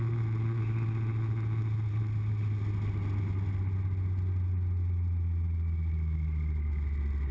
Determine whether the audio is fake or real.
real